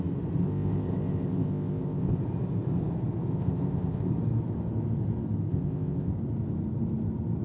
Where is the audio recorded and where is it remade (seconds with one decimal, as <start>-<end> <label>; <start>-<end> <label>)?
0.0-0.4 recorded; 0.4-2.2 remade; 2.2-3.3 recorded; 3.3-4.1 remade; 4.1-5.5 recorded; 5.5-6.1 remade; 6.1-7.4 recorded